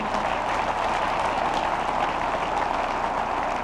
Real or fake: real